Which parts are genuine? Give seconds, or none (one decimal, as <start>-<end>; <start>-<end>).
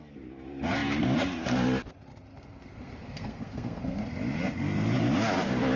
0.0-2.3; 4.0-5.8